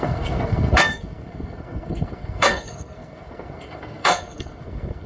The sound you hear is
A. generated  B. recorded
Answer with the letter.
A